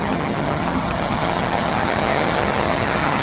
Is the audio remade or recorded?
remade